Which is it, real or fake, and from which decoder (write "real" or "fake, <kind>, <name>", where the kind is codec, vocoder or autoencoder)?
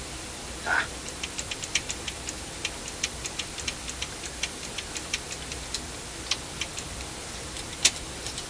fake, vocoder, BigVGAN v2